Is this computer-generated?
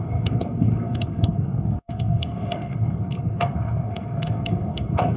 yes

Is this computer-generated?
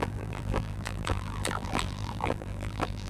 yes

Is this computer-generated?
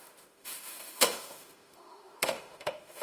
yes